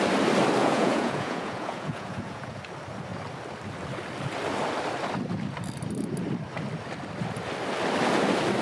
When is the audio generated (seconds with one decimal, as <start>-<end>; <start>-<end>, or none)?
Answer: 0.6-2.6